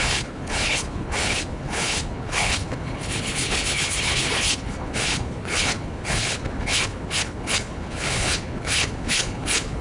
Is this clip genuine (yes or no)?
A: no